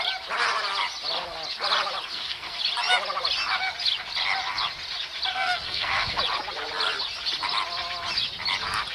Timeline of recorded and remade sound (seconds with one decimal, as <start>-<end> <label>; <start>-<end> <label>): 0.0-2.1 recorded; 2.1-2.6 remade; 2.6-5.3 recorded; 5.3-6.2 remade; 6.2-8.9 recorded